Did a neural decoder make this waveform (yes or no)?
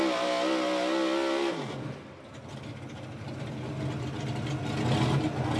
no